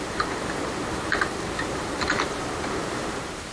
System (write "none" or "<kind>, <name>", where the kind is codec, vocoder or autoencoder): vocoder, BigVGAN v2